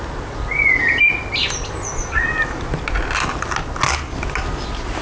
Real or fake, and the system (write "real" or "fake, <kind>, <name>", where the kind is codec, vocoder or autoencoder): real